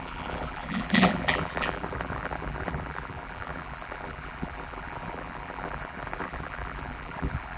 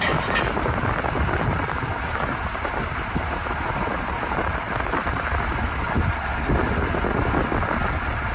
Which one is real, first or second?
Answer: second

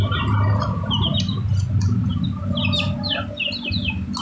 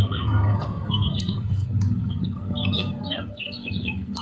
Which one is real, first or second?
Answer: first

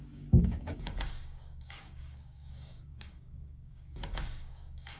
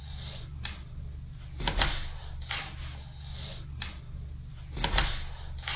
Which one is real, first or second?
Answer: second